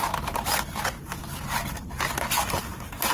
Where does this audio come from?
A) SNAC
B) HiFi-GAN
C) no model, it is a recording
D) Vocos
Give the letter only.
C